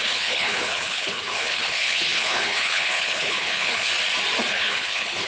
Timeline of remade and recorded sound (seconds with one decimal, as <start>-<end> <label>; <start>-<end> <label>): 0.0-3.9 remade; 3.9-4.5 recorded; 4.5-5.3 remade